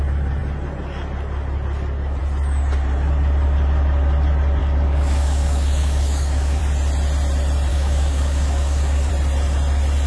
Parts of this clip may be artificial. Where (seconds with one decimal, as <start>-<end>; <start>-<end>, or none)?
4.6-6.6; 7.7-9.1